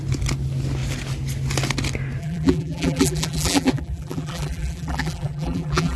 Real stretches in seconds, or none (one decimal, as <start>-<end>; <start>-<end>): 0.0-2.2